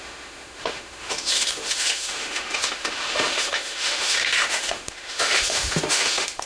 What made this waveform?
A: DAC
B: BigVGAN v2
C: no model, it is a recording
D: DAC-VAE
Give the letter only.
D